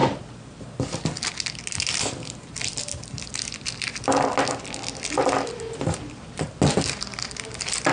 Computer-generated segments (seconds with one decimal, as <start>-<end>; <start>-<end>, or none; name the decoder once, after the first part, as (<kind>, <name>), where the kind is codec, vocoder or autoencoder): none